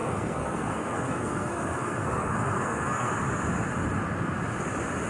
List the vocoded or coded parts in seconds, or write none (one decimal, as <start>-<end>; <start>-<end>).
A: 0.0-3.1